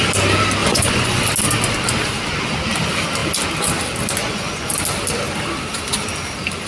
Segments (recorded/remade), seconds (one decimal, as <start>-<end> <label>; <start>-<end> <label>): 0.0-0.6 recorded; 0.6-1.2 remade; 1.2-4.2 recorded; 4.2-4.7 remade; 4.7-6.7 recorded